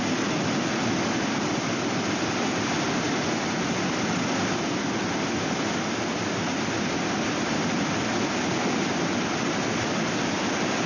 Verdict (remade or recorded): recorded